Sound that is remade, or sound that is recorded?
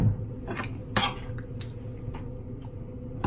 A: recorded